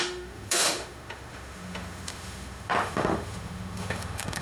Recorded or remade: remade